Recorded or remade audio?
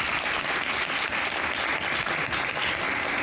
recorded